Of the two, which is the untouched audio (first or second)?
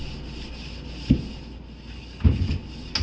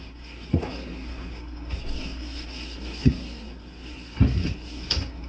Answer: first